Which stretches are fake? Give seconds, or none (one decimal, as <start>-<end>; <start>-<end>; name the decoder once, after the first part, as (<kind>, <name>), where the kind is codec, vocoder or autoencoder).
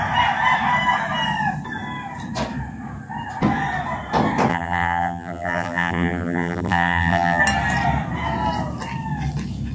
4.5-7.4 (vocoder, BigVGAN v2)